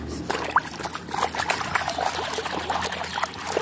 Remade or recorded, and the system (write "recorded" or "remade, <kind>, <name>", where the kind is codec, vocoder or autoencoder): recorded